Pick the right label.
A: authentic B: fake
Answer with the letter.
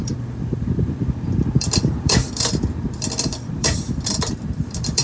B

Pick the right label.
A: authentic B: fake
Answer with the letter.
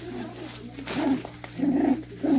A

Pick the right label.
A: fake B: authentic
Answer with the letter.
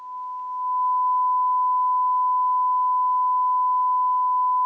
B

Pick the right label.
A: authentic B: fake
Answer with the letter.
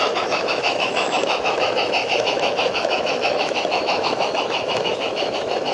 B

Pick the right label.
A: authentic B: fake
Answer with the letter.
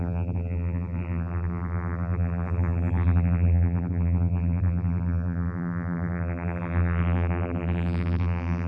B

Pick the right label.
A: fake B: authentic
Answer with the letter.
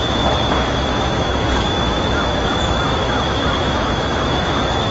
A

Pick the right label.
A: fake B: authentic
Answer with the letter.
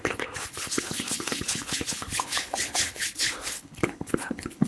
A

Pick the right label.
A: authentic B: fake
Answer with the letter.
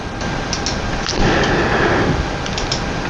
A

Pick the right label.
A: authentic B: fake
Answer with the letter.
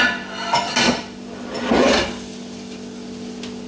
A